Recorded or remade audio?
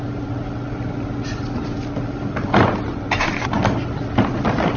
recorded